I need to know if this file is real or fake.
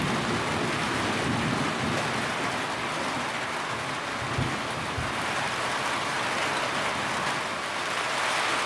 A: real